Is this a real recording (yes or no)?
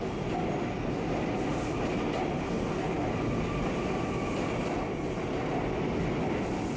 yes